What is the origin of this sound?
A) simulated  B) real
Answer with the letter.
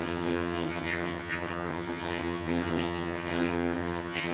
A